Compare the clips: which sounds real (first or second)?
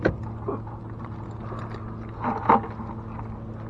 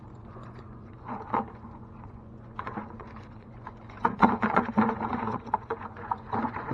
first